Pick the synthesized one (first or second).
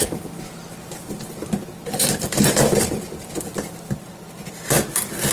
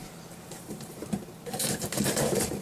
second